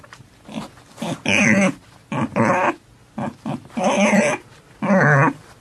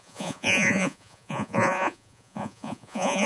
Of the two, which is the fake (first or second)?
second